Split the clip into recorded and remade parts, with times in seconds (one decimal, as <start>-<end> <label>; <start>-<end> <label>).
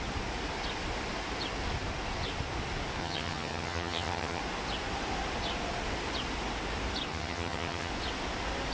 0.0-3.0 recorded; 3.0-4.4 remade; 4.4-7.1 recorded; 7.1-7.9 remade; 7.9-8.7 recorded